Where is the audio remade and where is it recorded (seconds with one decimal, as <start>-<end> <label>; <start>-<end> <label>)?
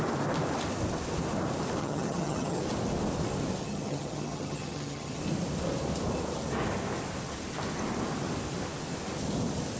0.0-1.8 recorded; 1.8-2.6 remade; 2.6-3.6 recorded; 3.6-5.2 remade; 5.2-9.8 recorded